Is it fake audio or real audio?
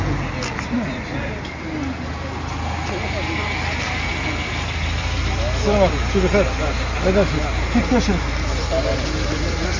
real